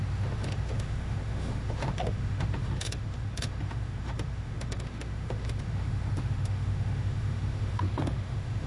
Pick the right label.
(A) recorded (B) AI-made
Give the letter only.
B